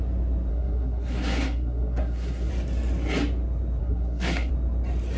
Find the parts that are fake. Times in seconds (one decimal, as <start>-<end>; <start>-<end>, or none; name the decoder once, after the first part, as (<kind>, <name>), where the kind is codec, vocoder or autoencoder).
0.5-2.5 (codec, SNAC); 3.8-4.5